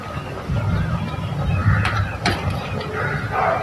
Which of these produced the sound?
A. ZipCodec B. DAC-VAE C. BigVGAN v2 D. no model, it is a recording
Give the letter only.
D